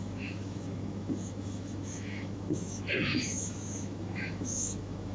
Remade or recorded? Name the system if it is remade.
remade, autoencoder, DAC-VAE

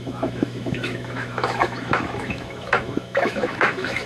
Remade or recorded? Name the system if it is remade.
remade, autoencoder, DAC-VAE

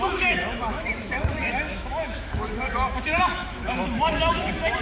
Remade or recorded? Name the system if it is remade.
remade, autoencoder, DAC-VAE